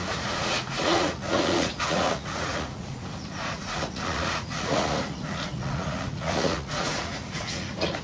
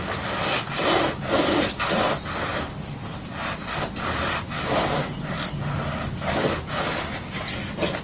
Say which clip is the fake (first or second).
first